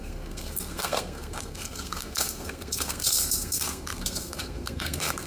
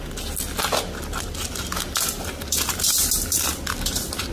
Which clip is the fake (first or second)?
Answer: first